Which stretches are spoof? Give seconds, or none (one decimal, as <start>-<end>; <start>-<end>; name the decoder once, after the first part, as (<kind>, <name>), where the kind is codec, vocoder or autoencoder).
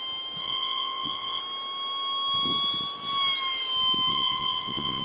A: 0.4-1.4 (vocoder, WaveNeXt); 4.1-5.0